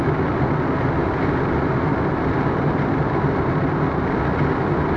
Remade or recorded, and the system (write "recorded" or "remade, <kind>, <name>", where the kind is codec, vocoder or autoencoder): recorded